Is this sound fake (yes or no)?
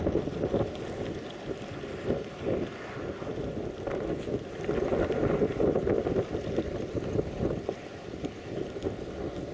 no